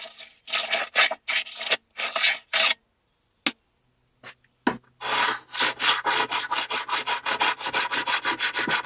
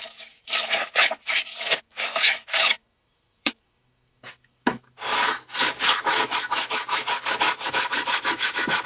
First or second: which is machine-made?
second